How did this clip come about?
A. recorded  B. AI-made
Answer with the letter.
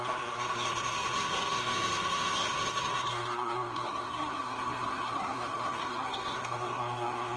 B